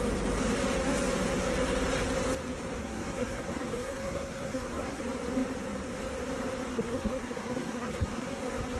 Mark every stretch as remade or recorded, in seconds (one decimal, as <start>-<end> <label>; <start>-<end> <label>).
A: 0.0-2.8 recorded; 2.8-5.0 remade; 5.0-6.7 recorded; 6.7-8.4 remade; 8.4-8.8 recorded